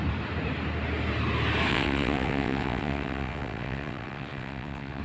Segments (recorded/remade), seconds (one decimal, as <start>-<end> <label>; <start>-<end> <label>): 0.0-1.7 recorded; 1.7-5.0 remade